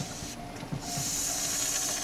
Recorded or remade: recorded